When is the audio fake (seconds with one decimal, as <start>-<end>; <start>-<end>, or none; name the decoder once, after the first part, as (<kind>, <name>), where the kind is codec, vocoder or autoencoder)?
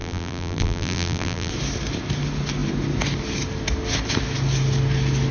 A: 0.0-1.5 (vocoder, BigVGAN v2)